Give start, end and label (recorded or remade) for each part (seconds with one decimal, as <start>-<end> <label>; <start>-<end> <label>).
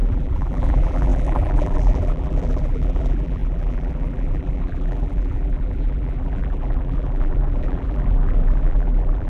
0.0-9.3 remade